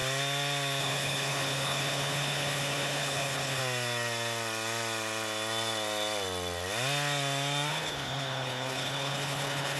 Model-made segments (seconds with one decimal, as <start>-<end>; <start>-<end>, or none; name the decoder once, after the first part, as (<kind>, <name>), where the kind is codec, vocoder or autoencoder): 0.8-3.6 (codec, HILCodec); 7.7-9.8